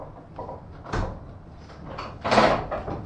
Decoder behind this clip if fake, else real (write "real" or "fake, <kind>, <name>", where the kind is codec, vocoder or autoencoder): real